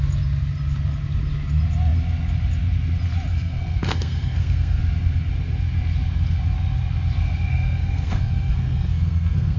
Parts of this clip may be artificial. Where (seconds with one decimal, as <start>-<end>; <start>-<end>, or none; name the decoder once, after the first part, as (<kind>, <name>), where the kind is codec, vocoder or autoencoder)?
3.3-4.8 (codec, SNAC); 7.5-9.6